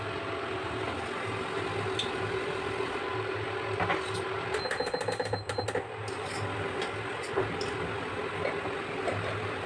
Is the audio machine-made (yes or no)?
no